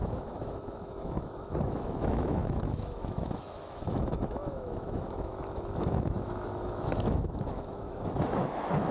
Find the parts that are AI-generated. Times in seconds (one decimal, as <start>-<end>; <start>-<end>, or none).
0.0-8.9